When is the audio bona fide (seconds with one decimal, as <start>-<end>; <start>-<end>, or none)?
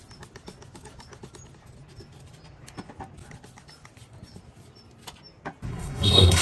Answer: 0.0-5.7